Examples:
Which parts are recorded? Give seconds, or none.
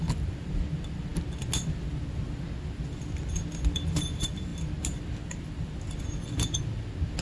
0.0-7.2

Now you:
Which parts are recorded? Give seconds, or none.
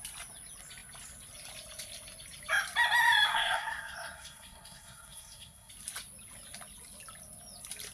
0.0-3.3; 5.7-7.9